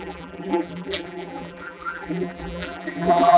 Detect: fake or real fake